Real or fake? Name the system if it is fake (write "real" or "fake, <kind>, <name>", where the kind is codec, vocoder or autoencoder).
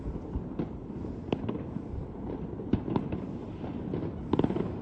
real